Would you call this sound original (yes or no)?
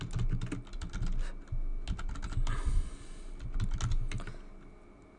yes